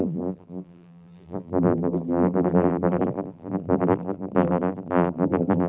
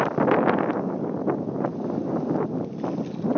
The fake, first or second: first